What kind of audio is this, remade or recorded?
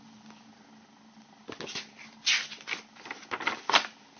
recorded